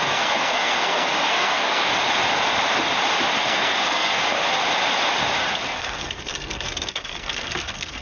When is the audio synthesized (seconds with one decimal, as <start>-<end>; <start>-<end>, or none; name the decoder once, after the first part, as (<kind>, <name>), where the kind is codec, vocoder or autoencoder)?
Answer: 0.0-1.9 (codec, SNAC); 3.4-4.2; 5.8-8.0